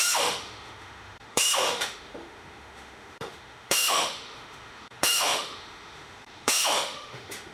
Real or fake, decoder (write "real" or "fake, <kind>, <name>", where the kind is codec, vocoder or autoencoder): fake, autoencoder, DAC-VAE